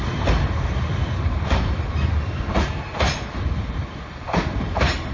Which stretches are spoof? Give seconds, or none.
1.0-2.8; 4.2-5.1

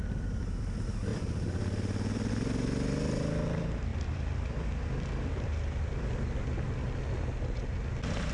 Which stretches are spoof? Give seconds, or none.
1.1-2.3; 3.9-6.6

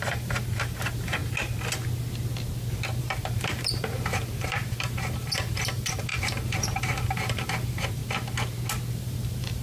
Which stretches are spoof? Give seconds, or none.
0.0-1.2; 3.0-8.0; 8.9-9.6

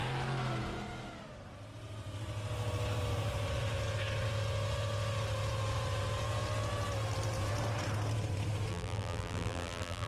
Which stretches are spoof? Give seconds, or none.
8.7-10.1

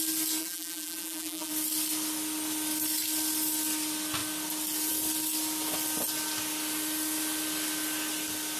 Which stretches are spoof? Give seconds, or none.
0.4-1.5

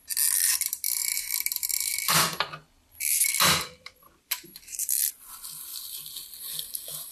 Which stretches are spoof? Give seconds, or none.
1.0-5.3; 5.7-6.3

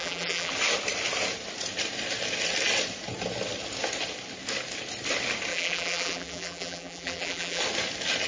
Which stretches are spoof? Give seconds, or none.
0.0-0.5; 5.5-7.6